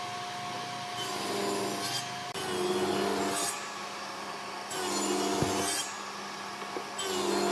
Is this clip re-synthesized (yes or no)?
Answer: no